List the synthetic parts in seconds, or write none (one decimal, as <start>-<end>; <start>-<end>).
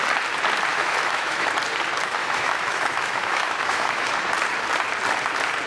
0.7-1.5; 2.2-4.1